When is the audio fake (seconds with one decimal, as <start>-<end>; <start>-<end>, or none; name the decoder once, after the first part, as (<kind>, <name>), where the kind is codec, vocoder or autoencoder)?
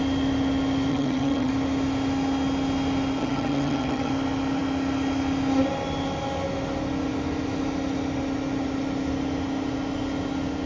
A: 0.9-1.5 (vocoder, HiFi-GAN); 3.2-4.1